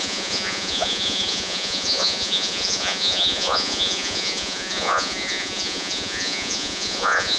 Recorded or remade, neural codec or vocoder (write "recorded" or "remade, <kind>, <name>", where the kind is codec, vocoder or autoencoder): remade, vocoder, Vocos